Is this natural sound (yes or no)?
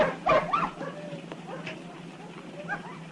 yes